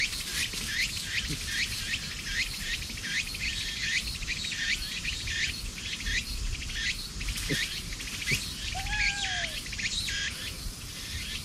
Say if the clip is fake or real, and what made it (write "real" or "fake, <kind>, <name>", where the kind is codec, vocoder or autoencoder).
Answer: fake, vocoder, BigVGAN v2